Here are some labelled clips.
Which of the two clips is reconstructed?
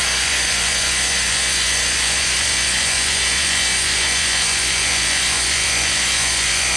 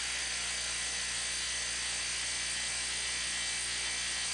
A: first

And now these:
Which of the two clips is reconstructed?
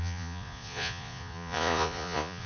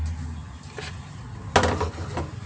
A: first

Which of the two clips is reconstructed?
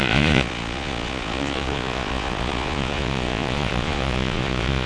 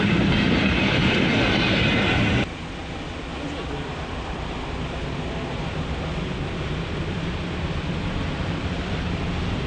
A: first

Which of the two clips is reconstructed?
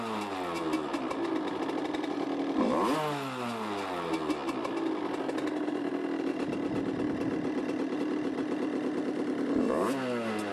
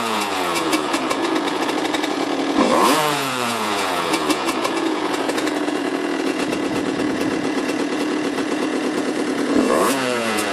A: second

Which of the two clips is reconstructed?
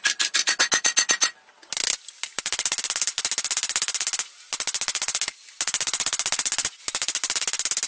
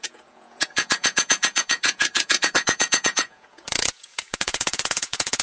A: second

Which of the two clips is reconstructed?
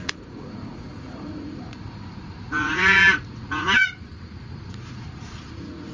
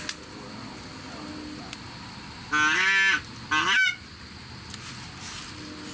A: first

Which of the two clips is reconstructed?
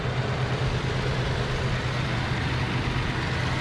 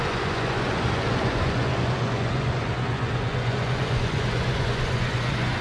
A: second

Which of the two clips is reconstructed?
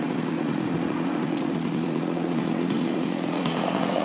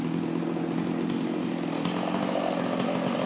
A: first